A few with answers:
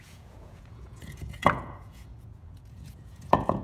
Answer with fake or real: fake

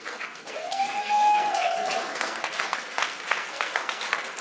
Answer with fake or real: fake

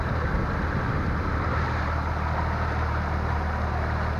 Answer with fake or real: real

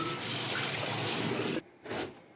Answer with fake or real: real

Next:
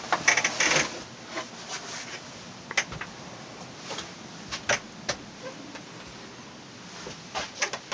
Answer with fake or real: real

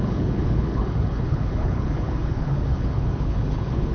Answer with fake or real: fake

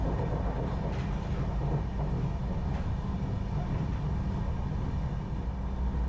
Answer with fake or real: real